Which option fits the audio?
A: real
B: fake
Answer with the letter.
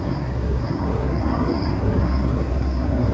B